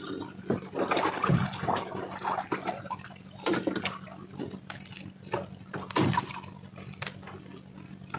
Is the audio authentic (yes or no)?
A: no